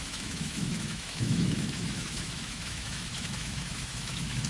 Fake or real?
fake